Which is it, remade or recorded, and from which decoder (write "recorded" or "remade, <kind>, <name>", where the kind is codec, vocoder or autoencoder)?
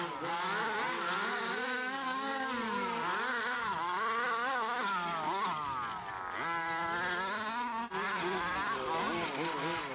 recorded